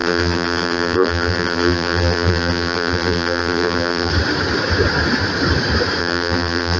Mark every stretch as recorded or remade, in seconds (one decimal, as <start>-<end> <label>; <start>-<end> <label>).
0.0-4.1 remade; 4.1-6.0 recorded; 6.0-6.8 remade